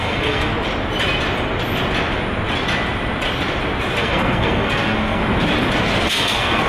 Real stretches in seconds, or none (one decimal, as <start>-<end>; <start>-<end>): 0.5-4.0; 5.2-6.1